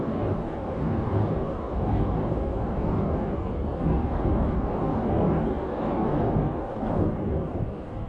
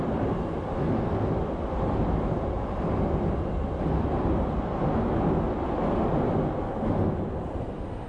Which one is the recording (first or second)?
second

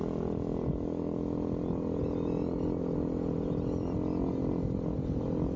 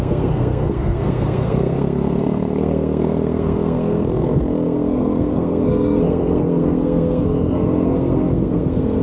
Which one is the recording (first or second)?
first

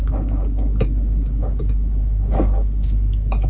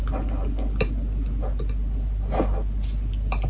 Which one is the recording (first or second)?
second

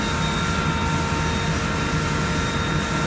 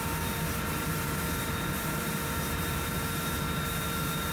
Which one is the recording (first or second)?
first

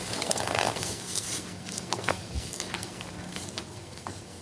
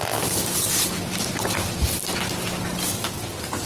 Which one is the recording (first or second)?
second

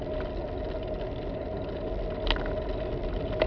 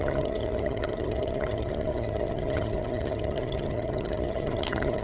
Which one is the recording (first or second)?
first